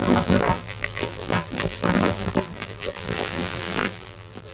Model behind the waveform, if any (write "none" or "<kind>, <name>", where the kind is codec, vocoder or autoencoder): vocoder, BigVGAN v2